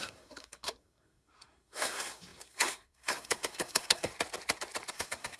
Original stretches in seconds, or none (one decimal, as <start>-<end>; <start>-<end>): 4.1-4.9